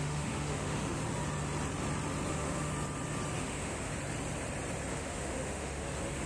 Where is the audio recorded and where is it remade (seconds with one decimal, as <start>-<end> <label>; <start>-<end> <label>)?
0.0-1.0 remade; 1.0-2.3 recorded; 2.3-2.7 remade; 2.7-3.4 recorded; 3.4-3.9 remade; 3.9-4.9 recorded; 4.9-6.3 remade